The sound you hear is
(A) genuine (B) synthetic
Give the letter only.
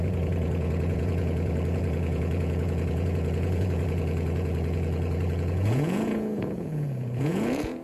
B